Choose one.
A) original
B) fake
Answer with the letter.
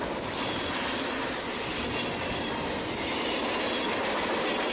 A